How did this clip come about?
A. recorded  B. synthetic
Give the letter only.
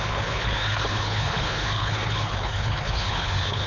B